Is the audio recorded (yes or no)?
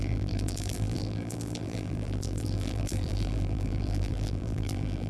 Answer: no